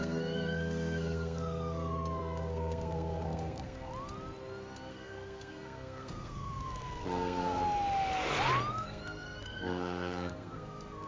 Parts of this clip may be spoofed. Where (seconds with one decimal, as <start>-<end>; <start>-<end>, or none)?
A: 0.0-3.9; 4.9-7.6; 8.7-11.1